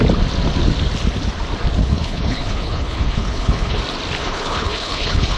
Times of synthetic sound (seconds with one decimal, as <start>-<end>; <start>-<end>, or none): 1.8-3.8; 4.2-5.4